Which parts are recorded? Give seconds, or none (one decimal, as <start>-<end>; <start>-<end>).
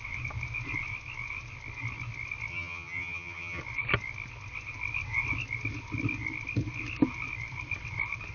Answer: 0.0-2.5; 3.6-8.3